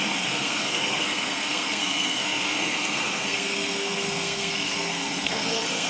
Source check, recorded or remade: remade